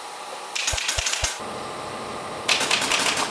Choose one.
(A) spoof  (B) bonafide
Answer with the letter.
B